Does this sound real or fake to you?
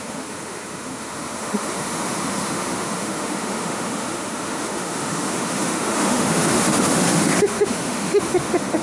fake